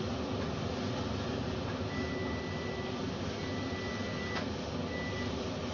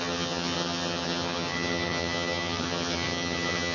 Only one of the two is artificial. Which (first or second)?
second